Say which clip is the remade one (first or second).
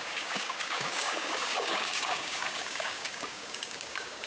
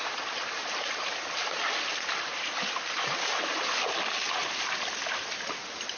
first